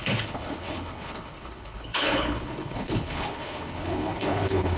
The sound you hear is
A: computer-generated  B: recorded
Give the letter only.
A